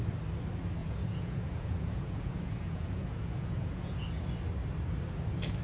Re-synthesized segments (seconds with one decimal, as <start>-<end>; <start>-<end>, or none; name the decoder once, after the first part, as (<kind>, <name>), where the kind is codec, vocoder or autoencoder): 0.8-4.2 (vocoder, Vocos)